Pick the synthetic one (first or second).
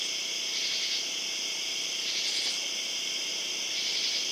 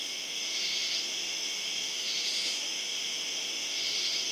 second